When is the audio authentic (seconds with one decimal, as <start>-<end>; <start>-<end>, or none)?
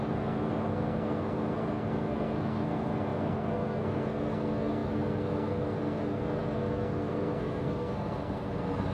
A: none